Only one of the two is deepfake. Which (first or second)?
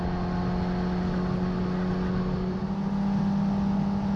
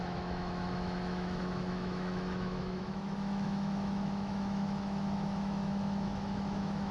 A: second